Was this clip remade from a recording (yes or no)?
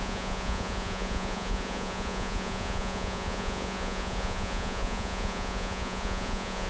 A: yes